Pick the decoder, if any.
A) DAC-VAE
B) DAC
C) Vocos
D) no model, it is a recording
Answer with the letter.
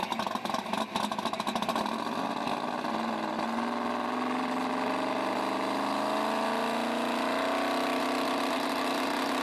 D